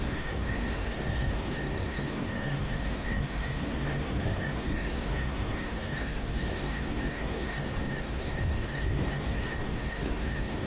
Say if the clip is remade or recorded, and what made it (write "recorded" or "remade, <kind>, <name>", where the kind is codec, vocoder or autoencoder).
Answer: remade, codec, SNAC